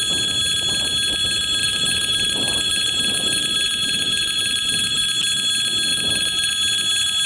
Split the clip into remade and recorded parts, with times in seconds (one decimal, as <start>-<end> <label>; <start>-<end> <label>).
0.0-1.6 recorded; 1.6-5.0 remade; 5.0-5.9 recorded; 5.9-6.5 remade; 6.5-7.3 recorded